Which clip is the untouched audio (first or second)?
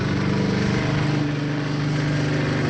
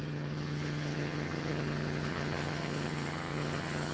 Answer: first